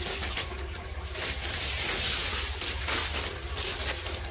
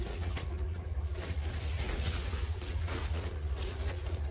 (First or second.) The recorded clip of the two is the first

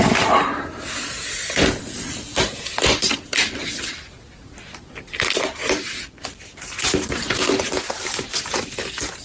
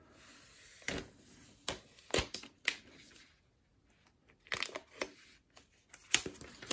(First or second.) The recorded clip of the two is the second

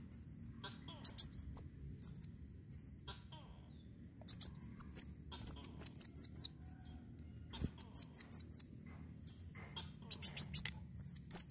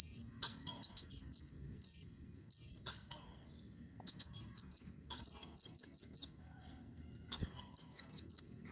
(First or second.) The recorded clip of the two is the first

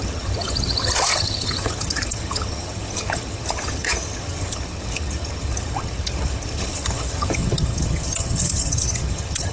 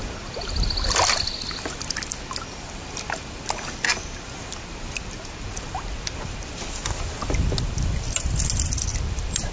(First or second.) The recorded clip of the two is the second